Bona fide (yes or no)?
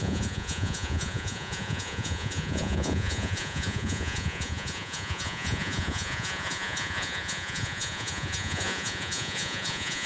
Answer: no